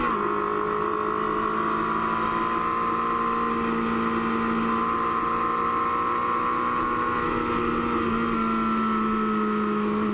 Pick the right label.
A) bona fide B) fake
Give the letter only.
A